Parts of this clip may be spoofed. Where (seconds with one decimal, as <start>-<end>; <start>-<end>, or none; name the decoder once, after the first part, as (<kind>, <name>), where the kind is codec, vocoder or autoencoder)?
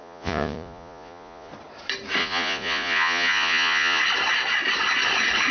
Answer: 0.0-1.5 (vocoder, Vocos); 2.2-4.0